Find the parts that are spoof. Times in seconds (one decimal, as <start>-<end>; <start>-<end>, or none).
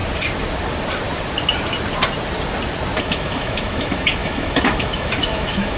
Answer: 3.0-5.8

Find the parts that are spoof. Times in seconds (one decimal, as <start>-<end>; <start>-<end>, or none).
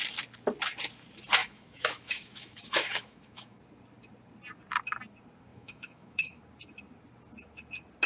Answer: 1.4-3.6; 5.5-6.4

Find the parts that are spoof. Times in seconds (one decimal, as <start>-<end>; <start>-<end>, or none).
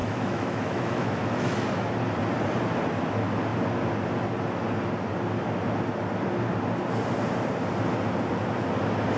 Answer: 0.0-1.9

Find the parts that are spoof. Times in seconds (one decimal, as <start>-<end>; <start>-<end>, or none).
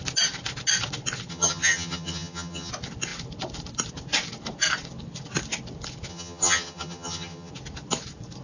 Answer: 1.3-2.7; 6.1-7.5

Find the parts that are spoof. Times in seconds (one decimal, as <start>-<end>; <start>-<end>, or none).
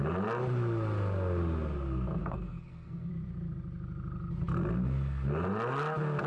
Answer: 2.2-3.1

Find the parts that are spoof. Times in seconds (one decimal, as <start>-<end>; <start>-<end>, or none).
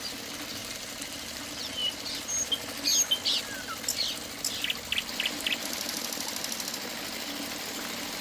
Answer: 0.6-1.4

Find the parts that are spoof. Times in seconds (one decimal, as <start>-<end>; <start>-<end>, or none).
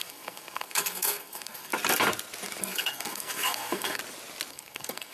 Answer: 0.0-1.7; 2.6-4.0; 4.5-5.1